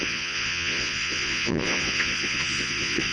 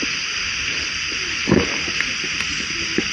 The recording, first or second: second